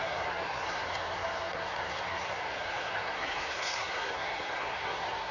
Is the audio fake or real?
fake